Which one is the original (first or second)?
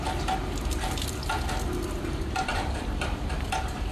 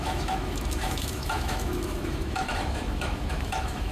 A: first